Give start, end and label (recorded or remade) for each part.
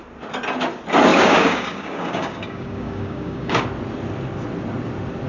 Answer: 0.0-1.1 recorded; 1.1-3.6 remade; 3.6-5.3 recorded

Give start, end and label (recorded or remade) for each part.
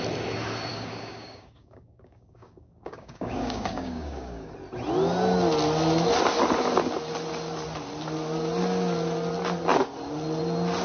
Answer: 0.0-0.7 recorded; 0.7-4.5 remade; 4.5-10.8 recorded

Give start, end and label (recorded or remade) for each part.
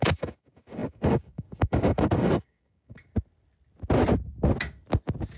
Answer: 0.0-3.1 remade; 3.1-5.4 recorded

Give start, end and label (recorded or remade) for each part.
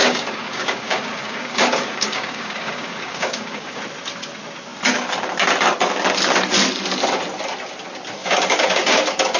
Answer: 0.0-3.8 remade; 3.8-8.2 recorded; 8.2-9.0 remade; 9.0-9.4 recorded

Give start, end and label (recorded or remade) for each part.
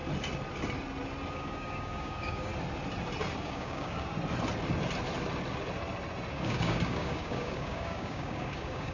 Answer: 0.0-1.3 recorded; 1.3-2.5 remade; 2.5-3.4 recorded; 3.4-4.1 remade; 4.1-6.3 recorded; 6.3-8.9 remade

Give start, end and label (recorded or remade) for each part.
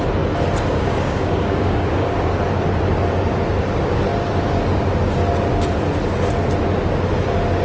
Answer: 0.0-0.7 recorded; 0.7-2.4 remade; 2.4-7.6 recorded